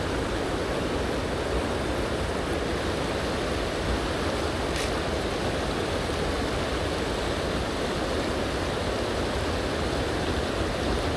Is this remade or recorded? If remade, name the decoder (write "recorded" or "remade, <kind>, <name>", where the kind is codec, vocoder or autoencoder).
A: recorded